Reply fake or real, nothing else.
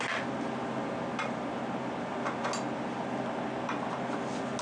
real